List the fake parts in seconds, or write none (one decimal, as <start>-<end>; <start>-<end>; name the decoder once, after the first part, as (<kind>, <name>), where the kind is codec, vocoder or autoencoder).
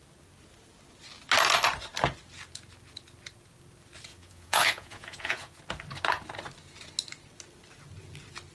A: 4.1-5.6 (vocoder, Vocos)